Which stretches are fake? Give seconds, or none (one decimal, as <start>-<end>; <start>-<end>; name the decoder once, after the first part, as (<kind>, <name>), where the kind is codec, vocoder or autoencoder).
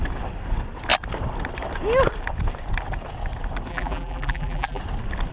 3.7-4.8 (vocoder, BigVGAN v2)